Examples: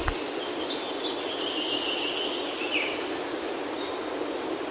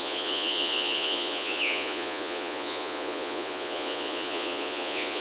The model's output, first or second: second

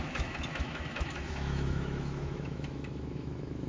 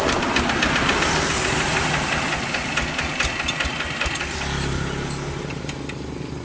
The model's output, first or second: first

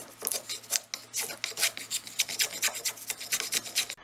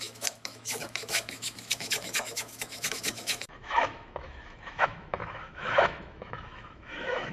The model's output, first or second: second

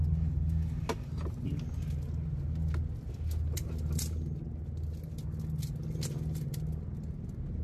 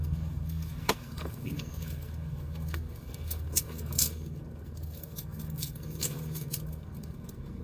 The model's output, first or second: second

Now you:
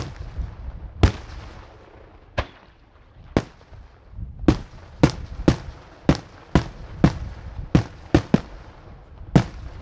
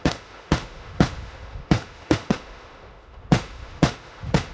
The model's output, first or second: second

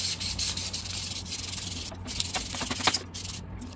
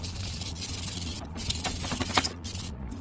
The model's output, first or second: second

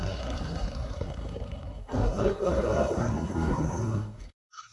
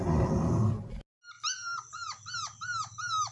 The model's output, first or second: first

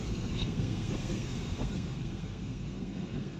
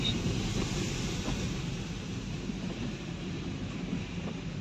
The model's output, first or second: first